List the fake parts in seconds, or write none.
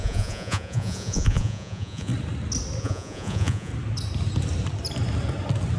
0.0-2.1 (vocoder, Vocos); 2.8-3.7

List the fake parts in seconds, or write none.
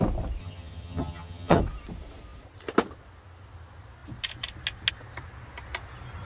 0.4-1.6 (vocoder, HiFi-GAN)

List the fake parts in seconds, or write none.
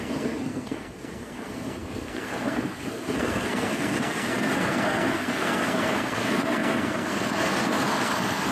0.0-8.5 (codec, SNAC)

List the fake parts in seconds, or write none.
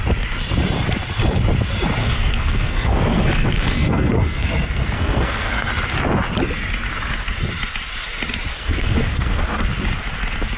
2.0-5.7 (codec, SNAC); 8.5-9.4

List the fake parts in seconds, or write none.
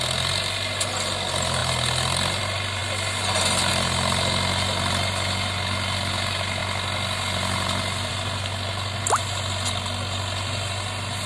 none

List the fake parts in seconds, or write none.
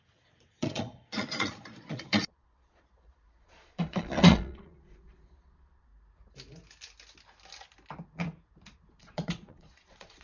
0.0-5.9 (vocoder, Vocos); 8.9-10.2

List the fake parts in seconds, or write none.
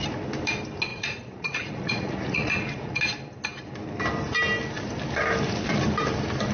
0.9-3.0 (vocoder, Vocos)